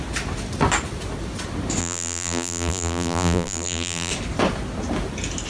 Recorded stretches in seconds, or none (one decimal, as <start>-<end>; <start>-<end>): 0.0-1.8; 4.1-5.5